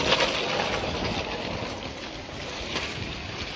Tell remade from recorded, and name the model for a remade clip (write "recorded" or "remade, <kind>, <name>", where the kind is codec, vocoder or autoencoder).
recorded